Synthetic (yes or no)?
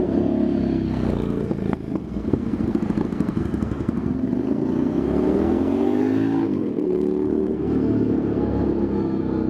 yes